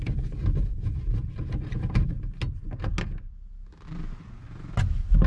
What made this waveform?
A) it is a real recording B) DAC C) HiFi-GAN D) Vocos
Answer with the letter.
A